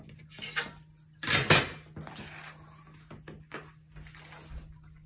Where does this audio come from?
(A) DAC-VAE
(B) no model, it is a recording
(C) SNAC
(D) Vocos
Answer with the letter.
B